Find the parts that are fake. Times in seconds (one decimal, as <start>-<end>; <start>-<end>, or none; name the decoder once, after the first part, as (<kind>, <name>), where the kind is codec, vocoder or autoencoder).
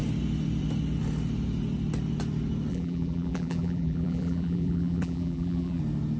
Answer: 2.7-5.8 (vocoder, BigVGAN v2)